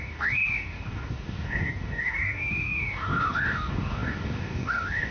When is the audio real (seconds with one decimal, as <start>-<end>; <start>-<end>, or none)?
none